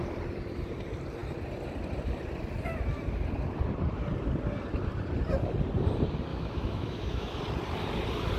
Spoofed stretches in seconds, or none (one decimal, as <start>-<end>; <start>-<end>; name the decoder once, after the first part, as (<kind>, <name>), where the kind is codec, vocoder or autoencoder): 6.3-7.4 (autoencoder, DAC-VAE)